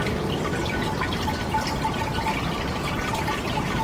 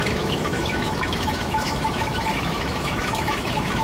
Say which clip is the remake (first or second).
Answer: second